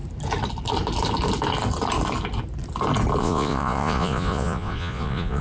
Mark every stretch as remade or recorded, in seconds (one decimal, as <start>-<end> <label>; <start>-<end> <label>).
0.0-3.2 recorded; 3.2-5.4 remade